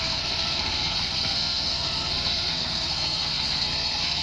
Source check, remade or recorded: remade